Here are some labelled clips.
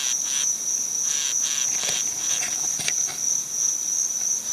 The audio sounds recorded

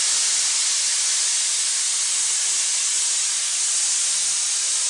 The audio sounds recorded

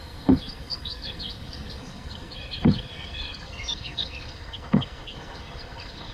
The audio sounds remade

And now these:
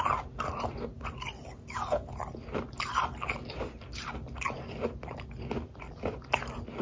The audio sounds recorded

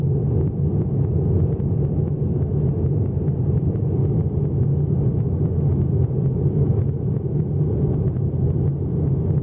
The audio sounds recorded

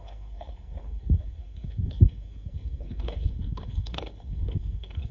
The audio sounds remade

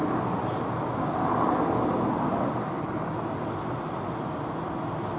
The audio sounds recorded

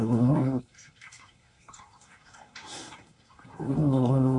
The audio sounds remade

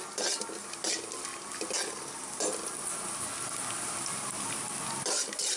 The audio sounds recorded